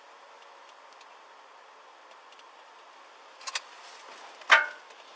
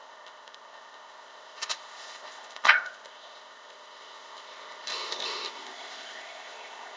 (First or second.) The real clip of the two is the first